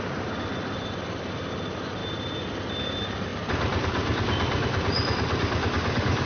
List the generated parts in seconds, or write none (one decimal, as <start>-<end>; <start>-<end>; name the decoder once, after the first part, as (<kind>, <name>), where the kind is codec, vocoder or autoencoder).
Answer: 0.0-2.0 (vocoder, BigVGAN v2); 2.8-3.3